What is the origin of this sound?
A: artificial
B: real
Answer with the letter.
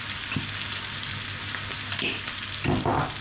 B